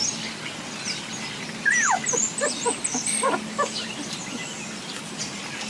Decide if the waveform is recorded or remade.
recorded